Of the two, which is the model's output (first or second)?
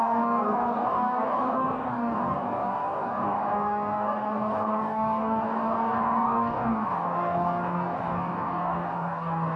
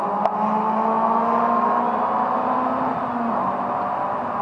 first